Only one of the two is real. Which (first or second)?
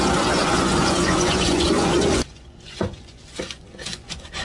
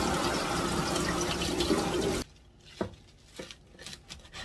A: second